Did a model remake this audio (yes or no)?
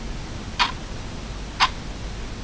no